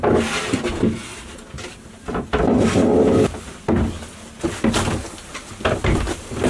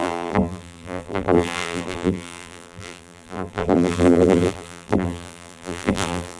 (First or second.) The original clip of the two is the first